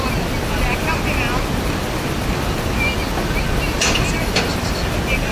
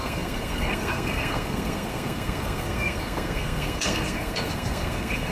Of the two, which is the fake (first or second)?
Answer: second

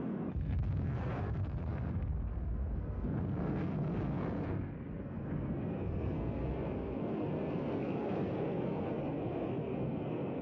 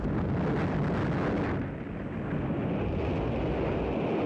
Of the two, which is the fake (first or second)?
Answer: first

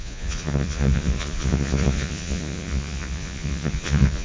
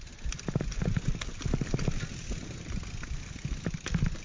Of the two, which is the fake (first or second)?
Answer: first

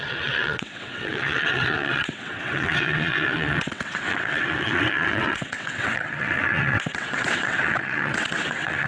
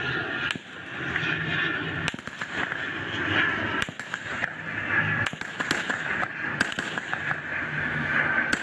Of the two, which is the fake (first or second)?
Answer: first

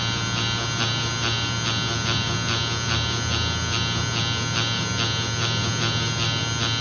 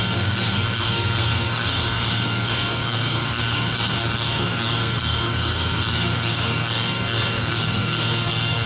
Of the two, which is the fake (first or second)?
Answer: second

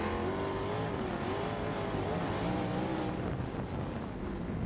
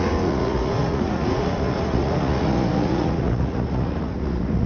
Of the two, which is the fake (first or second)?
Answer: second